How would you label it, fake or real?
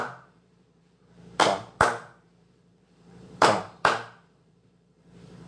fake